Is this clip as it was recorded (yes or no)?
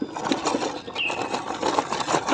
yes